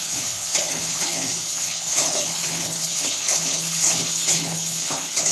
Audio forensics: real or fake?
fake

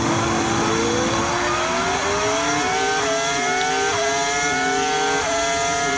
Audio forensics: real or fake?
real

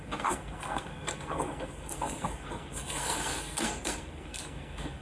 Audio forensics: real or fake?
fake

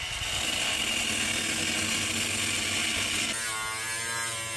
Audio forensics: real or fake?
real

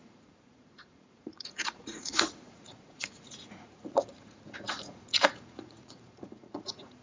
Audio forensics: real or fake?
fake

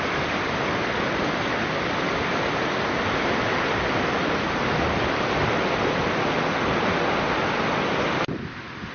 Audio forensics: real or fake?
real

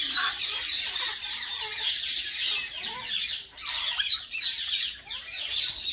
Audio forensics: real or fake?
fake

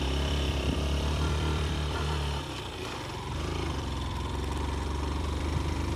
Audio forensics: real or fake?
fake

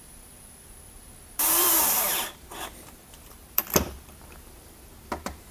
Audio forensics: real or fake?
fake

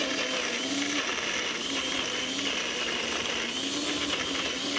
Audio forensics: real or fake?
real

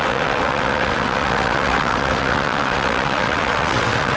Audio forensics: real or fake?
fake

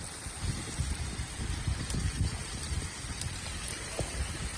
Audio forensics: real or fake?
real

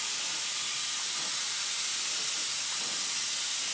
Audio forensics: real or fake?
real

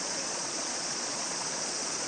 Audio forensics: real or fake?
fake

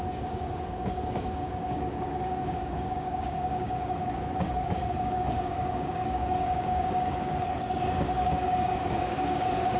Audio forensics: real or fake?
fake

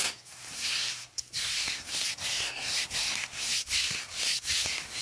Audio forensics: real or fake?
fake